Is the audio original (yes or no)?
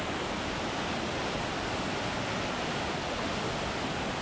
yes